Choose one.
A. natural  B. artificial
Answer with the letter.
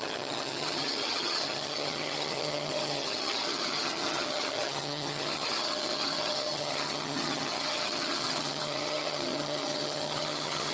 B